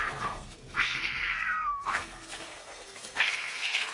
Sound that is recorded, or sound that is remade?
remade